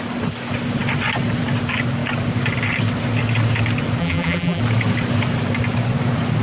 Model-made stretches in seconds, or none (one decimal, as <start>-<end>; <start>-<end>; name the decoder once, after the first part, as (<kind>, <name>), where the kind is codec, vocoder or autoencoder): 4.0-4.6 (vocoder, BigVGAN v2)